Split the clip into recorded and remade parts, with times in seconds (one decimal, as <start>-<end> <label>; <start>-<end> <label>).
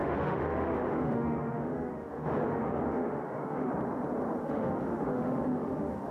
0.0-3.7 remade; 3.7-4.4 recorded; 4.4-6.1 remade